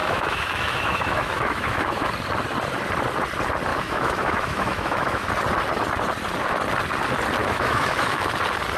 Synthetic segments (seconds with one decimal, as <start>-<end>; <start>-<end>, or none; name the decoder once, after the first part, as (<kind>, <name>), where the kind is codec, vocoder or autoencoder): 0.0-2.1 (autoencoder, DAC-VAE); 3.7-5.3; 7.4-8.3

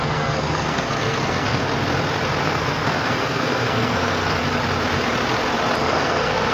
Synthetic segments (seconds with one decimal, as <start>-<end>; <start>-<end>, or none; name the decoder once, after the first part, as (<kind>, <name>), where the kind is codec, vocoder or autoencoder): 0.0-1.6 (codec, SNAC); 2.4-4.4; 5.8-6.5